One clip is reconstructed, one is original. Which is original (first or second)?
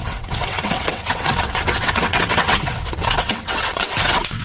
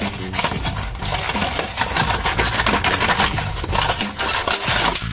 second